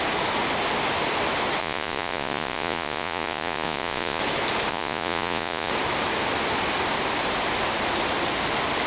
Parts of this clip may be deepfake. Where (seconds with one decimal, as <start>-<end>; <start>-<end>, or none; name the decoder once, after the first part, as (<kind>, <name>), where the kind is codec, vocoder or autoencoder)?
1.6-4.2 (vocoder, Vocos); 4.7-5.7